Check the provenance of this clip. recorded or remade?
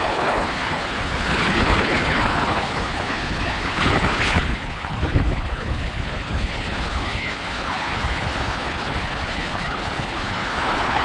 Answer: remade